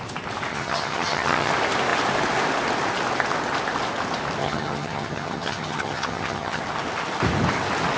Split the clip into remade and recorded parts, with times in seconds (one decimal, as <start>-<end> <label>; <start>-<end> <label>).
0.0-0.5 recorded; 0.5-1.5 remade; 1.5-4.4 recorded; 4.4-6.6 remade; 6.6-8.0 recorded